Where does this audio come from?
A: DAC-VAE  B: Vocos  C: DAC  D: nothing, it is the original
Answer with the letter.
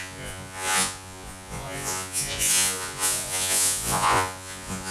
B